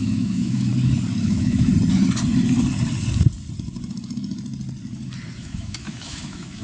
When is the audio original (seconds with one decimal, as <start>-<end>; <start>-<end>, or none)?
0.7-1.2; 1.7-5.4